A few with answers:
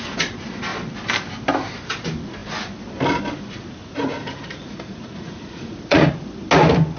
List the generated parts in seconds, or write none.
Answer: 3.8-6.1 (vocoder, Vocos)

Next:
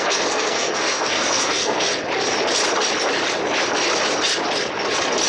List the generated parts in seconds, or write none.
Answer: 0.0-1.9 (codec, SNAC)

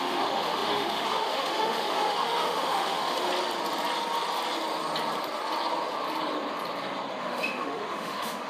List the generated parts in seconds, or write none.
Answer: 0.0-3.3 (autoencoder, DAC-VAE); 7.2-8.5

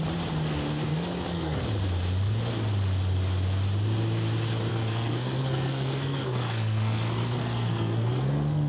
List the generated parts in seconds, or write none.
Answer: 0.9-1.6 (codec, SNAC); 4.7-8.7

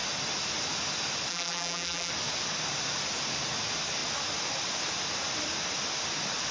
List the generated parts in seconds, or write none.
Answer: 1.3-2.1 (vocoder, BigVGAN v2)

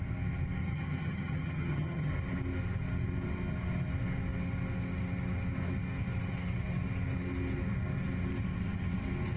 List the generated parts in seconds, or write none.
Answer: 0.6-2.1 (vocoder, HiFi-GAN)

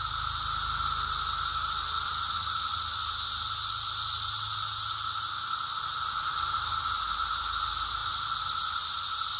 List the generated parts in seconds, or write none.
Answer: none